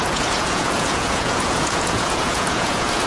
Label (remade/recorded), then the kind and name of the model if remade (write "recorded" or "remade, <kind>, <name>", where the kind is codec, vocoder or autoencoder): remade, vocoder, Vocos